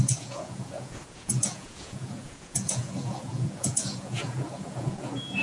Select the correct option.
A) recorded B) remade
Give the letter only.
B